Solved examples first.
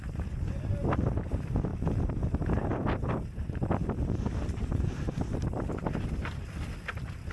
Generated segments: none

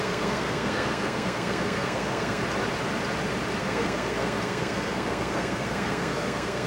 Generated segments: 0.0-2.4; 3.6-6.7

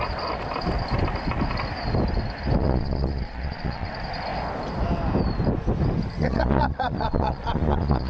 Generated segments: 2.6-3.9; 6.2-8.1